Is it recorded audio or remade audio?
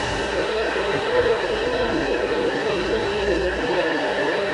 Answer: remade